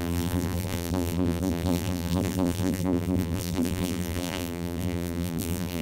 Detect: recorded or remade remade